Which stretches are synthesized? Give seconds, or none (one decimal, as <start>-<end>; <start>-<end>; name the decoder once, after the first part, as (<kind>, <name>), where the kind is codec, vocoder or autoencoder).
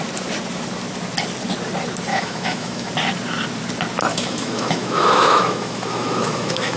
2.1-2.9 (autoencoder, DAC-VAE); 4.1-6.8